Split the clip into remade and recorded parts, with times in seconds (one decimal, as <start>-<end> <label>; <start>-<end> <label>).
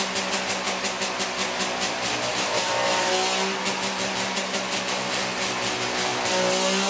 0.0-2.3 recorded; 2.3-3.1 remade; 3.1-6.9 recorded